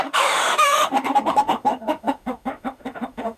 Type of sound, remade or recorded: remade